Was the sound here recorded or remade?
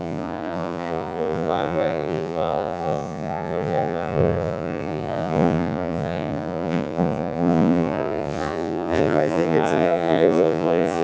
remade